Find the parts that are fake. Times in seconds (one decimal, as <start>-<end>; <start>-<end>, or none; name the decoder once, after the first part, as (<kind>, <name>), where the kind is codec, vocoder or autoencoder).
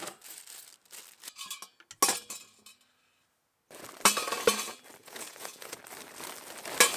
5.0-5.8 (vocoder, Vocos)